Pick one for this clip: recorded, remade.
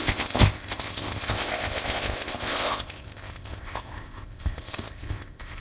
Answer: remade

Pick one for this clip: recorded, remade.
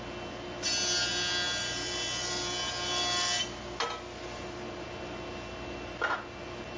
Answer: recorded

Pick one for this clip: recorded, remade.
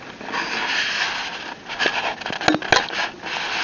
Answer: recorded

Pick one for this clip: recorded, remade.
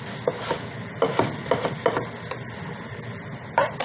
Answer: recorded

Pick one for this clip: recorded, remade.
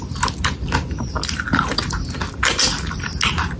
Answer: recorded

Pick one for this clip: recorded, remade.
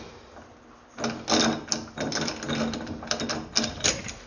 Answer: recorded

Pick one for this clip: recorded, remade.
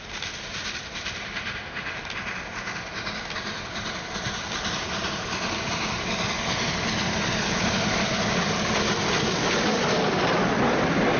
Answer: recorded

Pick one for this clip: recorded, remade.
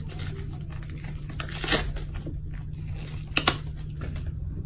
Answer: recorded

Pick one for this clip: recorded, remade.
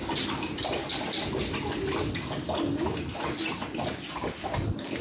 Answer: recorded